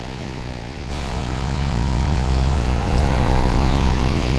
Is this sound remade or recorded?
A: remade